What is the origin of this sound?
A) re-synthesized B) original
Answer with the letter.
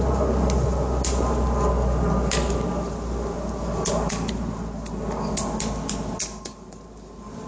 B